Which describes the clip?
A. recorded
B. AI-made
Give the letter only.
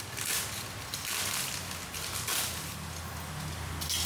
A